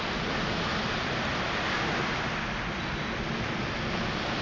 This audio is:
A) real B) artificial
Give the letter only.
A